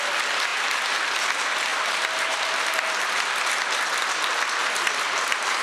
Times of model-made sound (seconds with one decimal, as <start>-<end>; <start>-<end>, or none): 0.5-1.0; 1.7-2.6; 4.6-5.6